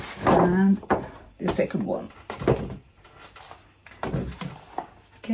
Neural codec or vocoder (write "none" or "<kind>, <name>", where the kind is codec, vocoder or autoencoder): none